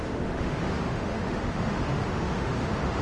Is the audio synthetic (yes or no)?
yes